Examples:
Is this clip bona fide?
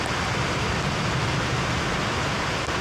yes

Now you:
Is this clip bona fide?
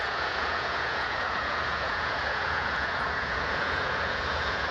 no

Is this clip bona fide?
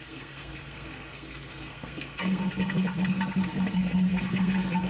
no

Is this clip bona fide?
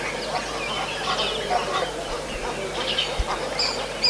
yes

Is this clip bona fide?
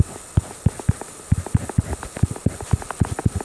yes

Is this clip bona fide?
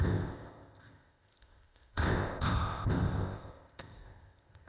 no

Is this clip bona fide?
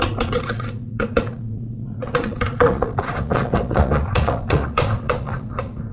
no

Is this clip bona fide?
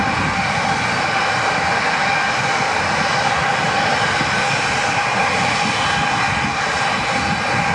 yes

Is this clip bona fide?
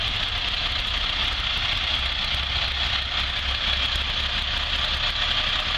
yes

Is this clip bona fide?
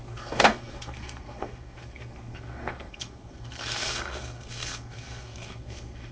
no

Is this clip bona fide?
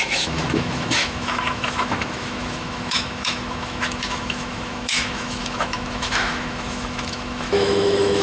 no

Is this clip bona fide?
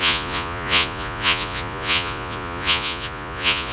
no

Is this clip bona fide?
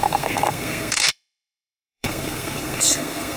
no